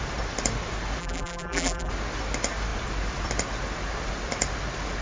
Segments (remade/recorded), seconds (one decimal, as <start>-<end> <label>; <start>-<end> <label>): 0.0-1.0 recorded; 1.0-1.9 remade; 1.9-5.0 recorded